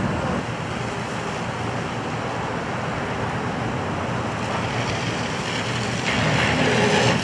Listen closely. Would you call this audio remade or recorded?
recorded